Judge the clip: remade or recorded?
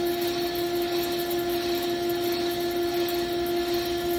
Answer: recorded